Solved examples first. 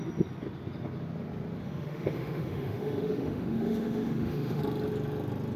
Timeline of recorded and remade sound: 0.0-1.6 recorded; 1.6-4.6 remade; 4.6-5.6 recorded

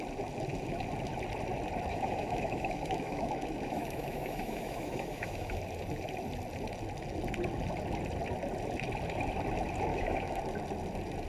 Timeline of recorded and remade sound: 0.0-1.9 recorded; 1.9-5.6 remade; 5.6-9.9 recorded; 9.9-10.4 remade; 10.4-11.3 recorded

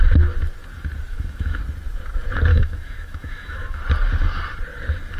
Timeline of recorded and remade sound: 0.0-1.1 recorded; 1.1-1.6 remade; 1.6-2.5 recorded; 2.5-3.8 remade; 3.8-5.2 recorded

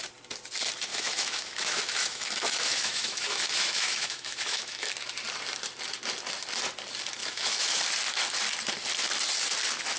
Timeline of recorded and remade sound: 0.0-0.9 recorded; 0.9-4.9 remade; 4.9-7.2 recorded; 7.2-7.8 remade; 7.8-10.0 recorded

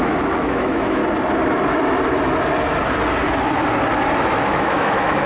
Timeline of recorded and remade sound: 0.0-1.0 remade; 1.0-4.2 recorded; 4.2-5.3 remade